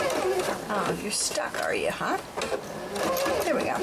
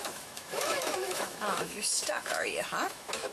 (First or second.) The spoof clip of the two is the second